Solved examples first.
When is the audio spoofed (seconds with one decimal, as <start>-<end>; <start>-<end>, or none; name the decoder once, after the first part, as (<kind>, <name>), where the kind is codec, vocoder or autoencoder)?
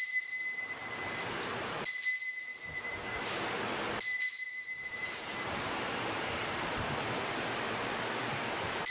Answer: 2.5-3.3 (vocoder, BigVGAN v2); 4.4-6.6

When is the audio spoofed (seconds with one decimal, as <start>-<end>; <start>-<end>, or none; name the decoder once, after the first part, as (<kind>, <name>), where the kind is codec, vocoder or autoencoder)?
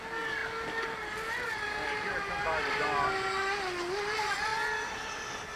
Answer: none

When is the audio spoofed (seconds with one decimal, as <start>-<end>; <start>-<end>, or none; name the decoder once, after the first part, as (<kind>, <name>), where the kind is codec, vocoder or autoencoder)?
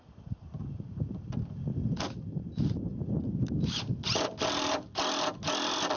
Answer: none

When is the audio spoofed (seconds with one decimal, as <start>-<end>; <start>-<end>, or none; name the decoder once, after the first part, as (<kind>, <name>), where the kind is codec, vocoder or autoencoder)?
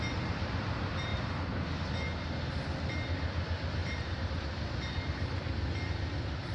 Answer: 1.1-1.8 (vocoder, BigVGAN v2); 3.8-5.0